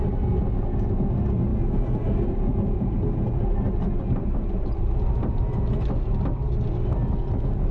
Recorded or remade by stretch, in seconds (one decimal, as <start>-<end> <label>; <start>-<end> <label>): 0.0-1.5 recorded; 1.5-5.7 remade; 5.7-7.7 recorded